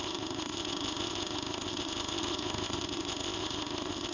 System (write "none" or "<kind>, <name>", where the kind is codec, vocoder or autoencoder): codec, ZipCodec